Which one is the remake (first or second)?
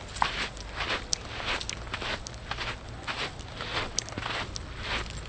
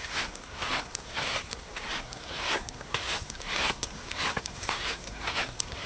second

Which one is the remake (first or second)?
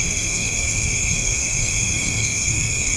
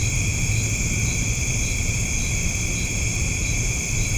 first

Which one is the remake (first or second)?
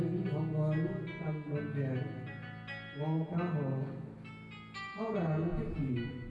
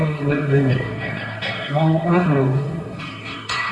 second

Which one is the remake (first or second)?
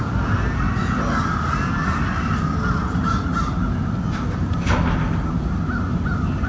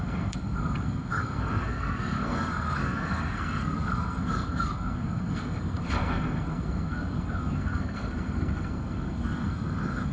second